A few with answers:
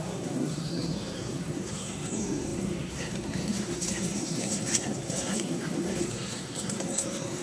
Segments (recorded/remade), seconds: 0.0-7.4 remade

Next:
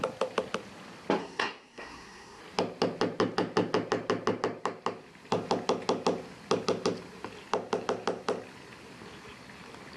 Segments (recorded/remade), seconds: 0.0-1.2 recorded; 1.2-2.4 remade; 2.4-10.0 recorded

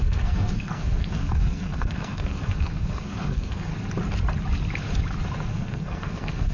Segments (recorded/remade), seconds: 0.0-3.7 remade; 3.7-5.5 recorded; 5.5-6.5 remade

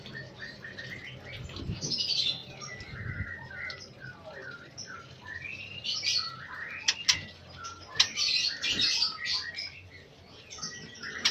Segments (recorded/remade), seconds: 0.0-11.3 recorded

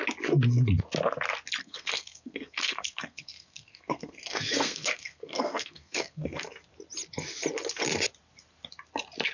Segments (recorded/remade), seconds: 0.0-1.6 recorded; 1.6-6.4 remade; 6.4-9.3 recorded

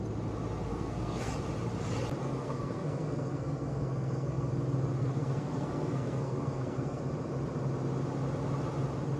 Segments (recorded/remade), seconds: 0.0-0.7 recorded; 0.7-1.3 remade; 1.3-2.2 recorded; 2.2-4.5 remade; 4.5-5.0 recorded; 5.0-7.0 remade; 7.0-9.2 recorded

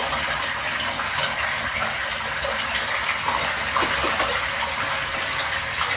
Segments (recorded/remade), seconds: 0.0-6.0 recorded